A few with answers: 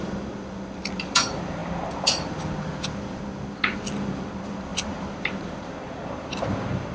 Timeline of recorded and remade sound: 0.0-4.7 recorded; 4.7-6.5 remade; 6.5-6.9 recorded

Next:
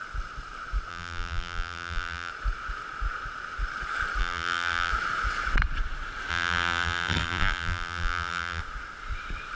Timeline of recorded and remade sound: 0.0-0.9 recorded; 0.9-2.3 remade; 2.3-4.2 recorded; 4.2-4.9 remade; 4.9-6.3 recorded; 6.3-8.6 remade; 8.6-9.6 recorded